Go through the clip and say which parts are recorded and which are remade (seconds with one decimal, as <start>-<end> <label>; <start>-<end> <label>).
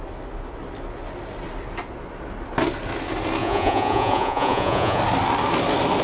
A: 0.0-3.4 recorded; 3.4-5.0 remade; 5.0-6.0 recorded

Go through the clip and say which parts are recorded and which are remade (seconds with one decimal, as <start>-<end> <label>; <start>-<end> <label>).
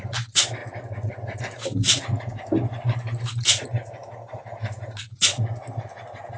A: 0.0-6.4 recorded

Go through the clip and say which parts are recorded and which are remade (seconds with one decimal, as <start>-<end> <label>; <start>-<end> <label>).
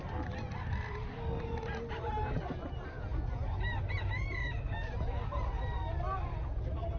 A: 0.0-7.0 recorded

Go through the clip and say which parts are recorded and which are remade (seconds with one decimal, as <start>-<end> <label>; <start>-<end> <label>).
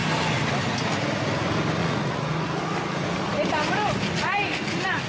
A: 0.0-1.8 recorded; 1.8-2.6 remade; 2.6-5.1 recorded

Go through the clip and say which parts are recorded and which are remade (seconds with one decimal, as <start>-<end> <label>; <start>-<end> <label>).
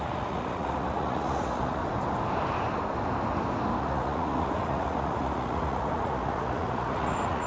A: 0.0-1.8 remade; 1.8-3.8 recorded; 3.8-7.5 remade